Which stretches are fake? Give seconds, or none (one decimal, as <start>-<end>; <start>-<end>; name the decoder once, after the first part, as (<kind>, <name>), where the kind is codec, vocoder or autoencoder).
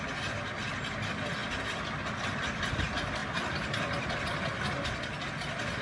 none